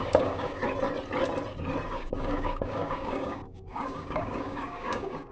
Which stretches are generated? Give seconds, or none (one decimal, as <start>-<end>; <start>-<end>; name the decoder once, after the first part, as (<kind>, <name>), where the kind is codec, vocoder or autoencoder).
0.0-0.6 (codec, DAC); 1.9-5.3